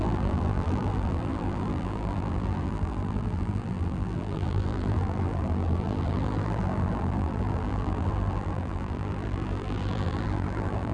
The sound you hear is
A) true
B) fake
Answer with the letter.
B